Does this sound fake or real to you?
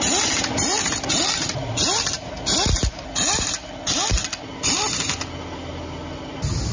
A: real